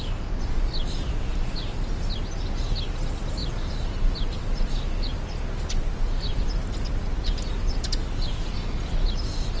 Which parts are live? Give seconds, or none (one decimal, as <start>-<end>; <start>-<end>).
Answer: 0.0-9.6